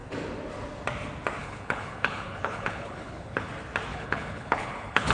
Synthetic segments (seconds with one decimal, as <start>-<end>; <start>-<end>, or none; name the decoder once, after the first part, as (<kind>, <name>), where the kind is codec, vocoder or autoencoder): 1.4-3.5 (codec, HILCodec); 3.9-5.1